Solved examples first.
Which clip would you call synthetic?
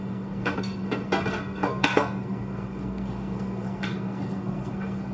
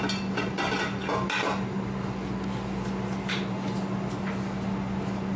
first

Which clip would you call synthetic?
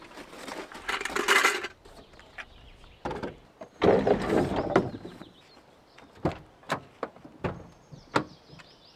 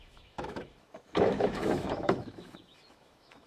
second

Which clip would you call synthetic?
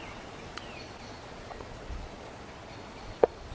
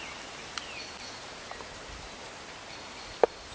first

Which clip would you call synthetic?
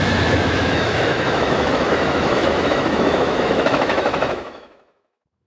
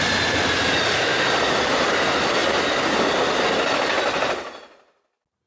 first